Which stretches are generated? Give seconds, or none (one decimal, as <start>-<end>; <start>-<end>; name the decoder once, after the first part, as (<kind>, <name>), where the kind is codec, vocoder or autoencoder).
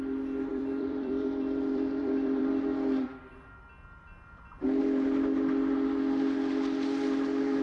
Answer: 0.5-2.5 (vocoder, BigVGAN v2)